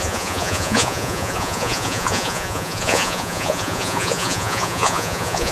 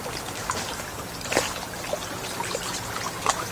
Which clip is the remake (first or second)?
first